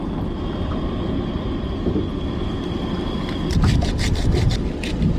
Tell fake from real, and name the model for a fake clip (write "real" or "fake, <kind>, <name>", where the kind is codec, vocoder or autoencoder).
real